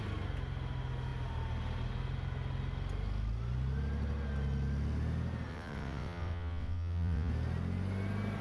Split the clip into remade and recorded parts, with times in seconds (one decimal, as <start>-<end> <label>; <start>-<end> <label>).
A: 0.0-5.5 recorded; 5.5-7.3 remade; 7.3-8.4 recorded